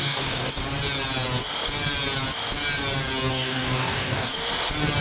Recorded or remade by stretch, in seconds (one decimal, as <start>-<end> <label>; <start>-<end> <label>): 0.0-0.6 remade; 0.6-3.3 recorded; 3.3-4.3 remade; 4.3-5.0 recorded